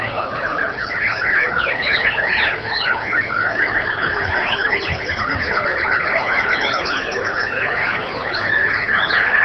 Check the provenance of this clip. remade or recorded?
remade